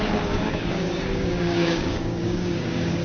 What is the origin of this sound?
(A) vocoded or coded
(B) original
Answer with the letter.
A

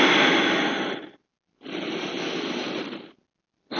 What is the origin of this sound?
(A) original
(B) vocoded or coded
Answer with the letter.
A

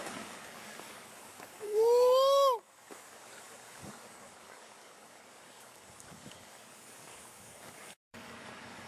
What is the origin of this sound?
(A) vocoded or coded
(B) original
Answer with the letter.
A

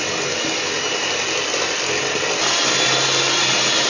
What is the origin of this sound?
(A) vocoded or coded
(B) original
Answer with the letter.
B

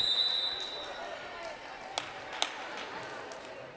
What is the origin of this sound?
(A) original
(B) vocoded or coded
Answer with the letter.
A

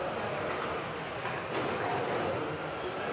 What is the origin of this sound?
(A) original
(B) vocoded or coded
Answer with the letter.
A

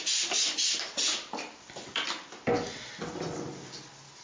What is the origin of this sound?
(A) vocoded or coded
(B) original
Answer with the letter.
B